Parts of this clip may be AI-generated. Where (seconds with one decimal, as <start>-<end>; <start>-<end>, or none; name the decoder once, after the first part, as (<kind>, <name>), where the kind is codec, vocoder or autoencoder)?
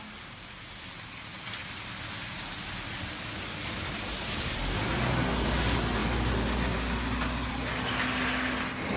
none